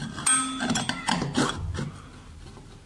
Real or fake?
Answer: real